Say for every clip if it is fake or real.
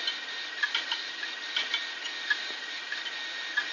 real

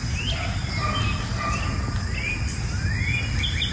real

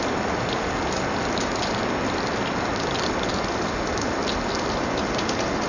real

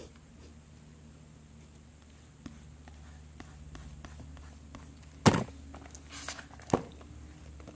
real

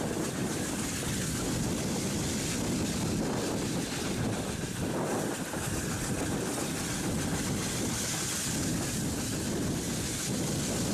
real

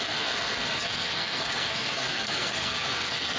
fake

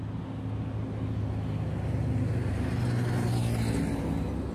real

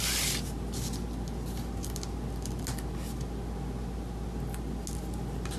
real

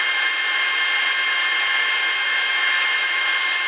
real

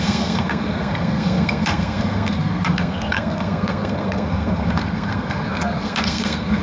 fake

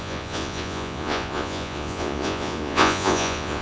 fake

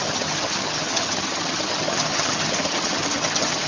fake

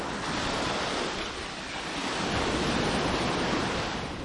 real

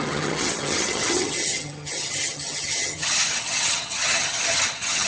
fake